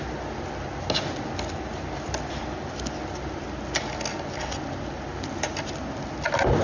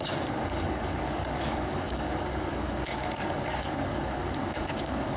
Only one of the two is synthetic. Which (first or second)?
second